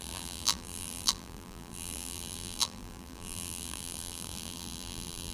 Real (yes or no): no